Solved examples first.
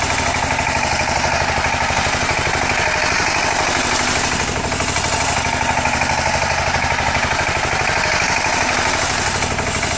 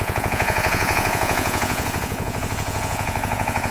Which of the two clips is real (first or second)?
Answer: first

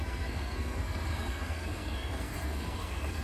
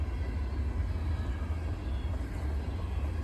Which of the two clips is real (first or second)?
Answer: second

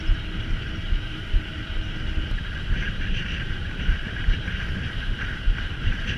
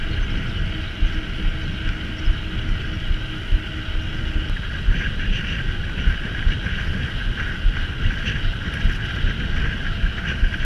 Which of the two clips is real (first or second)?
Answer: second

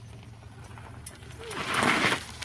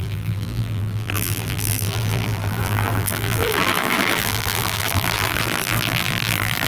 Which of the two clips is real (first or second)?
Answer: first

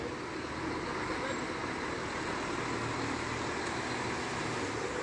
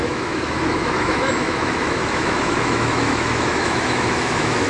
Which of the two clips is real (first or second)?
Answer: first